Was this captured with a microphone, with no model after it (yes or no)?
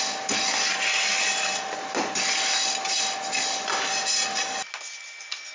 yes